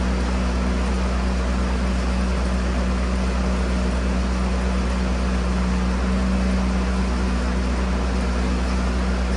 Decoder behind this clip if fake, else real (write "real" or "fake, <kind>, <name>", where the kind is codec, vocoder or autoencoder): real